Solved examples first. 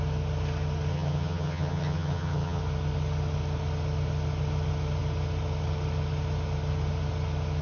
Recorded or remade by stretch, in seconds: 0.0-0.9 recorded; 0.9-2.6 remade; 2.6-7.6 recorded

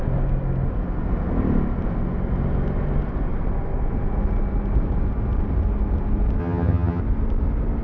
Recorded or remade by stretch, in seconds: 0.0-6.4 recorded; 6.4-7.0 remade; 7.0-7.8 recorded

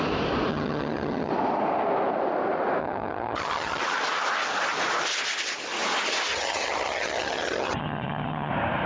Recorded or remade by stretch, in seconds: 0.0-0.5 recorded; 0.5-1.3 remade; 1.3-2.8 recorded; 2.8-3.8 remade; 3.8-6.3 recorded; 6.3-8.5 remade; 8.5-8.9 recorded

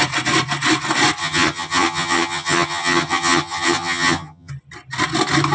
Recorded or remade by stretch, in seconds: 0.0-1.2 recorded; 1.2-4.5 remade; 4.5-5.5 recorded

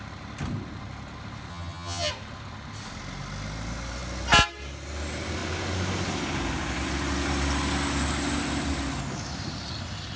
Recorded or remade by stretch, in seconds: 0.0-1.5 recorded; 1.5-2.1 remade; 2.1-10.2 recorded

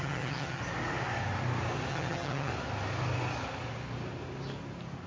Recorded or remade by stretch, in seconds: 0.0-0.6 remade; 0.6-1.9 recorded; 1.9-2.5 remade; 2.5-5.1 recorded

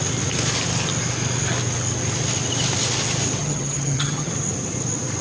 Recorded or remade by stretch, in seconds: 0.0-3.4 recorded; 3.4-4.3 remade; 4.3-5.2 recorded

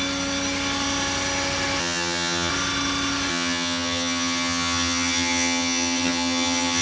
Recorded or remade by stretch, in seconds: 0.0-1.8 recorded; 1.8-2.5 remade; 2.5-3.3 recorded; 3.3-6.8 remade